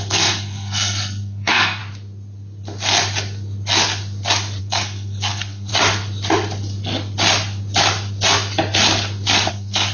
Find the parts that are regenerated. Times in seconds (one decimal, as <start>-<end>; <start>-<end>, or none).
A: 0.0-1.8; 4.6-5.7; 9.5-9.9